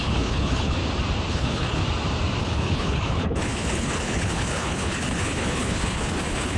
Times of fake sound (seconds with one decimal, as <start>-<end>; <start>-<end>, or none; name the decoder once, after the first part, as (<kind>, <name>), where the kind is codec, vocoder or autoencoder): 0.0-0.8 (codec, HILCodec); 1.3-1.8; 2.4-6.6